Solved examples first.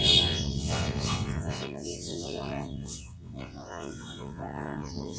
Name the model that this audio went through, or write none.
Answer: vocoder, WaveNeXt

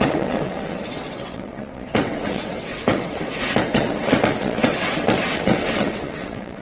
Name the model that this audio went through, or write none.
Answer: vocoder, WaveNeXt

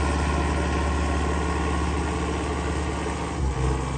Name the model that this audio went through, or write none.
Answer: none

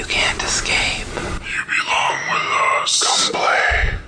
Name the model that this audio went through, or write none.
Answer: none